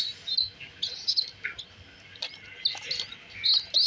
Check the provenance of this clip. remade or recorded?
recorded